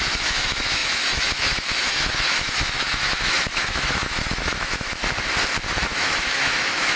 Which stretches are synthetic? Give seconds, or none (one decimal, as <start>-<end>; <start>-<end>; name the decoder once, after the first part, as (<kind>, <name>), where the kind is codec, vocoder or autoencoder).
0.0-5.0 (autoencoder, DAC-VAE); 5.7-7.0